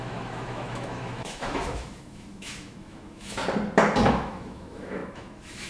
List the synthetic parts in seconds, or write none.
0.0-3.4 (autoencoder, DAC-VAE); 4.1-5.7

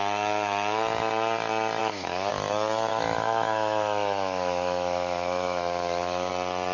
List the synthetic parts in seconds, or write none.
1.8-2.3 (autoencoder, DAC-VAE); 2.9-6.3

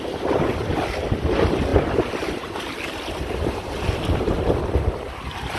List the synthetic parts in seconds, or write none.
none

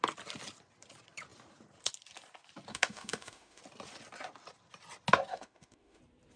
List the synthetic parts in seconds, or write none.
2.7-3.6 (autoencoder, DAC-VAE); 5.3-6.0

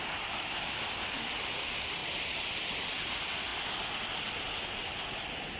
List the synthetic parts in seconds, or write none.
none

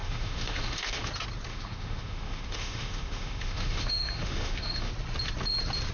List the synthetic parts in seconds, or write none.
0.0-1.1 (autoencoder, DAC-VAE); 1.5-4.9

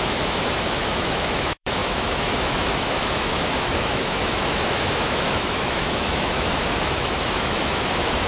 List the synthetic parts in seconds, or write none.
0.0-8.3 (autoencoder, DAC-VAE)

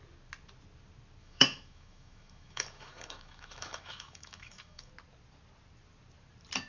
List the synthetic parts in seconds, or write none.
1.2-4.9 (autoencoder, DAC-VAE)